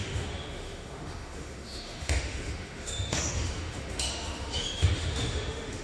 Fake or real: fake